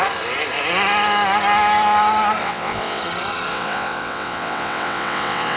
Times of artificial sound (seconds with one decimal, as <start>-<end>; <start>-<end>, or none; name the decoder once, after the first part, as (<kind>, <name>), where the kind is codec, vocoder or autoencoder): 2.4-3.0 (vocoder, WaveNeXt); 3.5-5.6